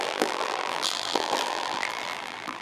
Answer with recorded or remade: remade